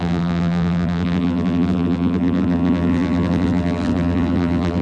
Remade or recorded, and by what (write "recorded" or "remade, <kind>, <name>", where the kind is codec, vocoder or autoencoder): remade, vocoder, BigVGAN v2